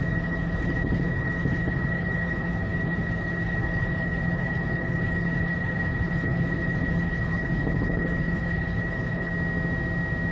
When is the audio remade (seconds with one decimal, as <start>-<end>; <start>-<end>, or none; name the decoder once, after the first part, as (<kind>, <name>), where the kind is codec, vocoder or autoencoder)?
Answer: 0.0-9.3 (codec, HILCodec)